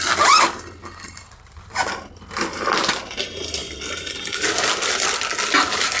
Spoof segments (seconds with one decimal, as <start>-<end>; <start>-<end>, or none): none